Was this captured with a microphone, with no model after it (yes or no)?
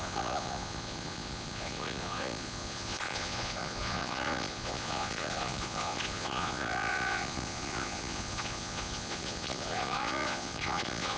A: no